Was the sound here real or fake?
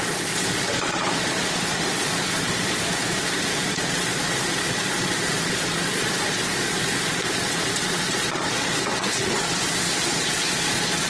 fake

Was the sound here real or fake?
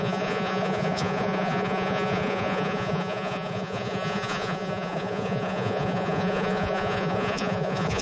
fake